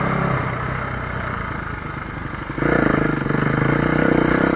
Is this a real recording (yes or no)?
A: yes